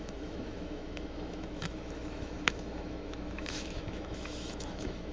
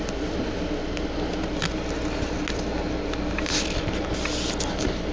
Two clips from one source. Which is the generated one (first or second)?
first